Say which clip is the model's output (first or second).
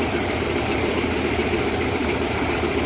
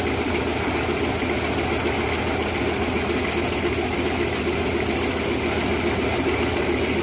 first